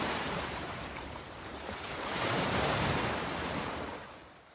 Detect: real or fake fake